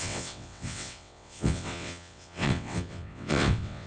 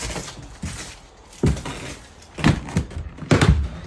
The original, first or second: second